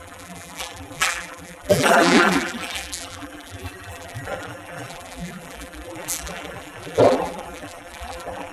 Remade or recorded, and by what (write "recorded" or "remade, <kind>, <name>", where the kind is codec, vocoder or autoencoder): remade, vocoder, BigVGAN v2